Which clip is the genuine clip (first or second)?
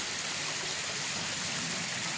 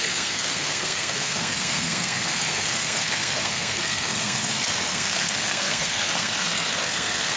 first